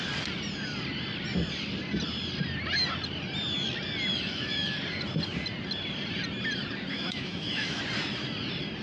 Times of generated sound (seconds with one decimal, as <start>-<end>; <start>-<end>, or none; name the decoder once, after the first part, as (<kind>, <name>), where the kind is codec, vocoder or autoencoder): 4.1-4.8 (autoencoder, DAC-VAE); 6.9-7.8